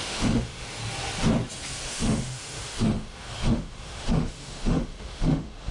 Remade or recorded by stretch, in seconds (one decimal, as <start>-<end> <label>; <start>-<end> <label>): 0.0-0.8 remade; 0.8-1.8 recorded; 1.8-5.7 remade